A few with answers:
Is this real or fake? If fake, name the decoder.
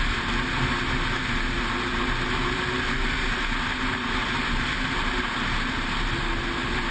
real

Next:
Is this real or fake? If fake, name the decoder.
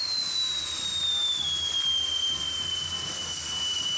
real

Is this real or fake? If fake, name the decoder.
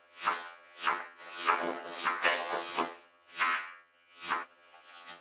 fake, vocoder, HiFi-GAN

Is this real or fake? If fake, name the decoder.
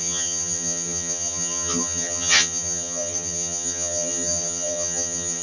fake, vocoder, HiFi-GAN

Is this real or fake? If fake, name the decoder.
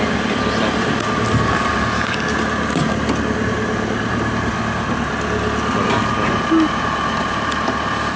real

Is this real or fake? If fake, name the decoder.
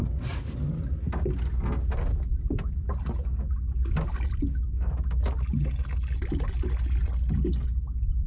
real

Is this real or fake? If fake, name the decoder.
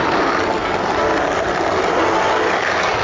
real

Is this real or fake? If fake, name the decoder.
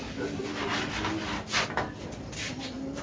real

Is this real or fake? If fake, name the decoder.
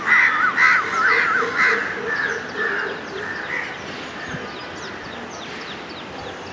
real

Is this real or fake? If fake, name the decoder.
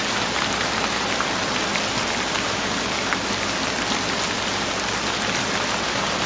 real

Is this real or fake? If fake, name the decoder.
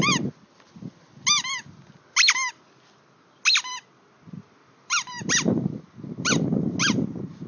real